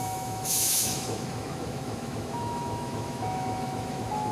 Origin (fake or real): fake